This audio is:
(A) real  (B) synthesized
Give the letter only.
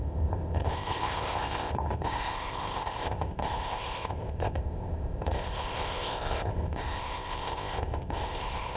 B